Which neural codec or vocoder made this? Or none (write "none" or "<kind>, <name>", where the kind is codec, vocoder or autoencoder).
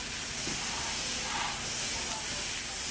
none